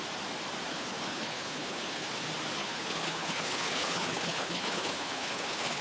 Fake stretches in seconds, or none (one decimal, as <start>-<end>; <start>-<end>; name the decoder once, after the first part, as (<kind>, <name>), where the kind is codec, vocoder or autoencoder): 0.7-2.1 (codec, HILCodec); 2.6-5.8